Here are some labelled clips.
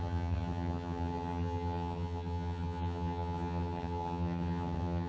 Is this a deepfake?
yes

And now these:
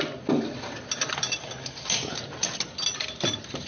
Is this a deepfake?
no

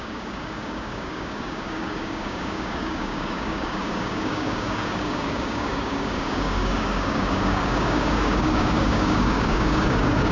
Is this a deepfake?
yes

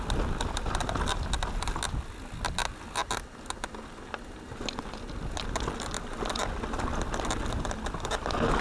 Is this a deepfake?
no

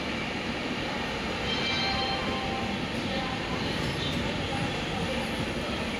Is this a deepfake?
no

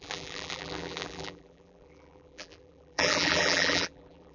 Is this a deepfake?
yes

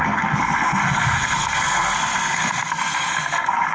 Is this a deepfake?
yes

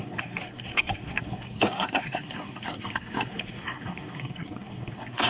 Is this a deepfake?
yes